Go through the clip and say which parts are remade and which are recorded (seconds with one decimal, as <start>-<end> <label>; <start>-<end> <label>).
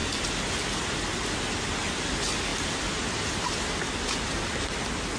0.0-5.2 recorded